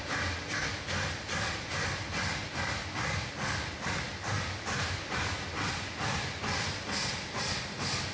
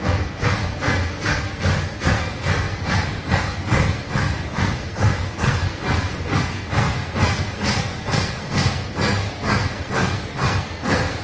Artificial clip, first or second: second